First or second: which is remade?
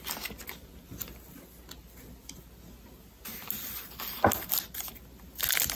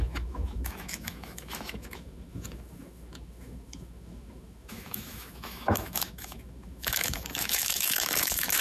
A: second